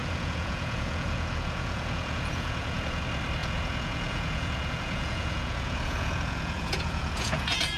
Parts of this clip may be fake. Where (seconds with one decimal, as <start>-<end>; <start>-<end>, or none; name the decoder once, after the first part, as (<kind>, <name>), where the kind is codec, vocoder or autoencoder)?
0.0-3.0 (vocoder, Vocos); 3.4-7.8